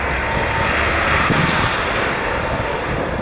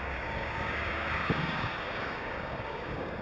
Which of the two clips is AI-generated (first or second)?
second